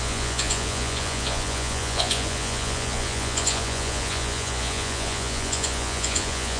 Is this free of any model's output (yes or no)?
no